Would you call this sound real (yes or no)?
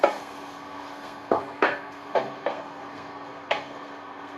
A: no